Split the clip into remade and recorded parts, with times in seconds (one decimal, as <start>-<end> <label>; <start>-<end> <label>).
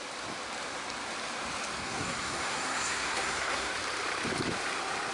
0.0-1.8 recorded; 1.8-3.7 remade; 3.7-5.1 recorded